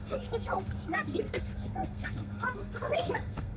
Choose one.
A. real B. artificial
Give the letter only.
B